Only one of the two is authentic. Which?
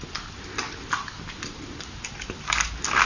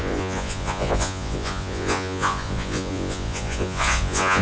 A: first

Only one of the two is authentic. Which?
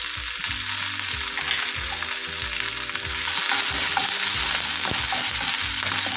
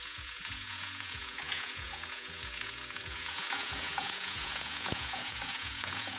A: first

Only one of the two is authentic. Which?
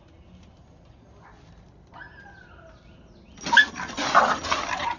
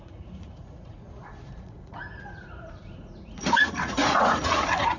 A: first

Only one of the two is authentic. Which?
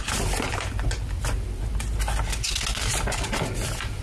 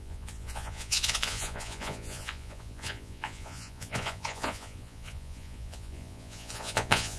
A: first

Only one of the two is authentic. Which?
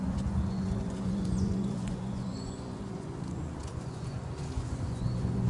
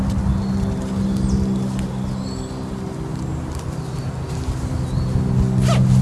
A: second